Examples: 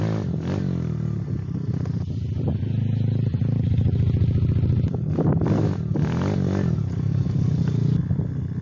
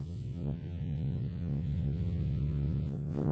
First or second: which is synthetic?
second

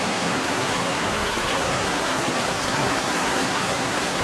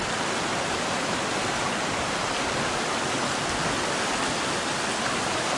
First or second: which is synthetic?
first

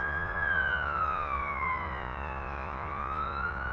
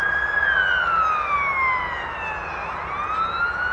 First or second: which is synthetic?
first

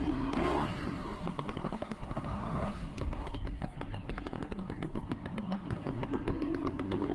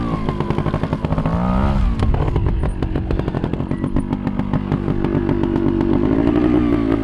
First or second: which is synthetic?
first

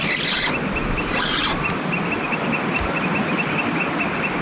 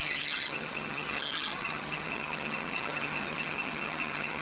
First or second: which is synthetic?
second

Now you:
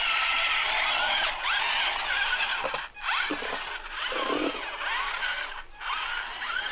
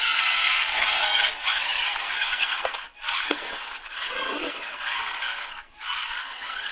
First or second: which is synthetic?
second